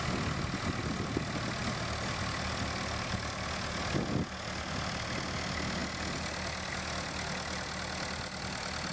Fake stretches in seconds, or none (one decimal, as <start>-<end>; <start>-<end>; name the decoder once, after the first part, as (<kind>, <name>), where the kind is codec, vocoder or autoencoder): none